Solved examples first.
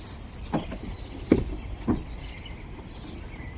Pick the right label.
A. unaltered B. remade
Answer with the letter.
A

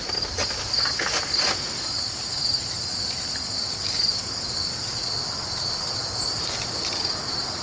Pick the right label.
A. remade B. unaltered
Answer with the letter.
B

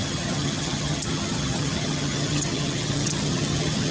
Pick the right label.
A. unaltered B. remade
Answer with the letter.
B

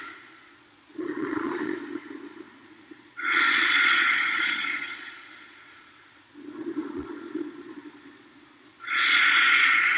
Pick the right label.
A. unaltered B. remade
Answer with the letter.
B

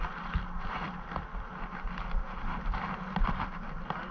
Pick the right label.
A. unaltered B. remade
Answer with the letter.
A